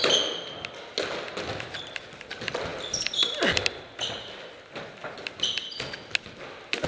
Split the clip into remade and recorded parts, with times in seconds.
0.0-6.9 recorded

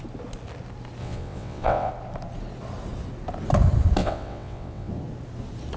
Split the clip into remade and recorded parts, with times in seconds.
0.0-1.0 recorded; 1.0-1.9 remade; 1.9-4.0 recorded; 4.0-4.9 remade; 4.9-5.8 recorded

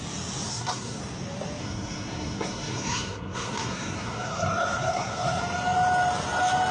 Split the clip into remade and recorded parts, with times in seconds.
0.0-0.5 recorded; 0.5-1.0 remade; 1.0-1.6 recorded; 1.6-5.4 remade; 5.4-6.7 recorded